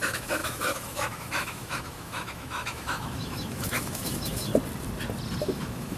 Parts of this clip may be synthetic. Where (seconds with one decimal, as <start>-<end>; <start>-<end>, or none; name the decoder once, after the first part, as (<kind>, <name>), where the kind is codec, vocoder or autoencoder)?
0.0-4.5 (autoencoder, DAC-VAE); 5.4-6.0